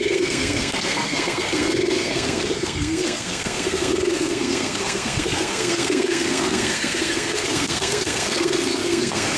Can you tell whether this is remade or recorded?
remade